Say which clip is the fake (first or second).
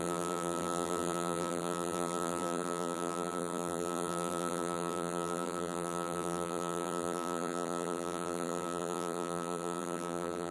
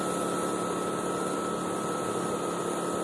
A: first